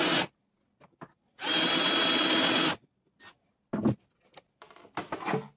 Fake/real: real